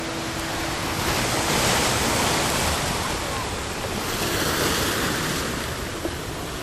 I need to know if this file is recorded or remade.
recorded